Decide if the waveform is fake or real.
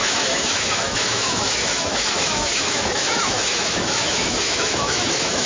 fake